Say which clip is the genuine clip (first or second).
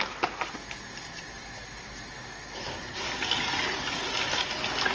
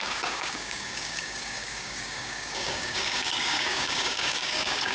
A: first